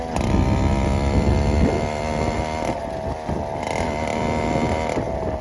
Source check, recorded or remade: recorded